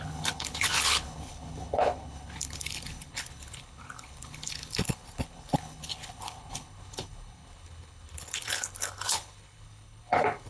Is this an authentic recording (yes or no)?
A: no